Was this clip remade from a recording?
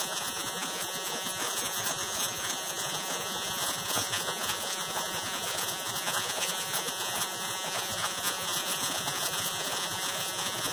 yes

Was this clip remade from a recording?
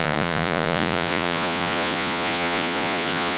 yes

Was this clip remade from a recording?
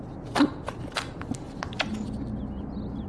no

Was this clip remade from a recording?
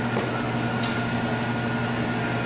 no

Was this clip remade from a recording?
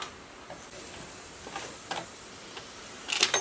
no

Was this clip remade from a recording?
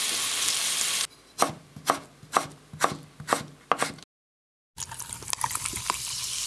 no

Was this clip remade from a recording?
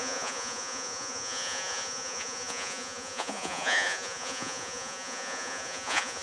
yes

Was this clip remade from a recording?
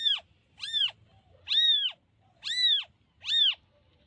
no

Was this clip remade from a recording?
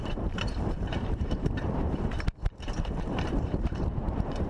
yes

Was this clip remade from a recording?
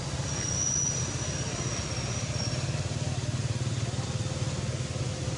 no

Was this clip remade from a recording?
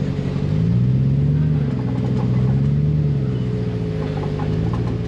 no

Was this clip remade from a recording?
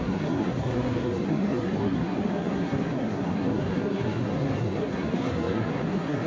yes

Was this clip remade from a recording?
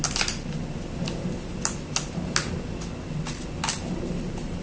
no